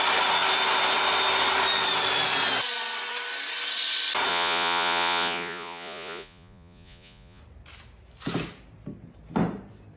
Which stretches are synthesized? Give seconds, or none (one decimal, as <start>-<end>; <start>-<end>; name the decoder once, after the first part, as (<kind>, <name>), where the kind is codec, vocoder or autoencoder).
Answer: 4.3-7.4 (vocoder, Vocos)